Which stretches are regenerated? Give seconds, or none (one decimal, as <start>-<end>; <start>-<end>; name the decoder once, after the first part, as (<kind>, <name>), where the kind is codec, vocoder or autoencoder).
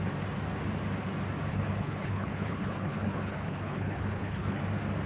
1.5-4.6 (codec, HILCodec)